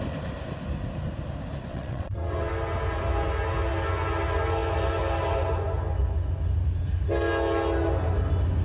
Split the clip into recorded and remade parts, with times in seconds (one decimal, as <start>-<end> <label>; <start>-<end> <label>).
0.0-1.7 recorded; 1.7-2.5 remade; 2.5-8.6 recorded